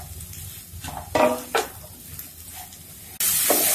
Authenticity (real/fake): real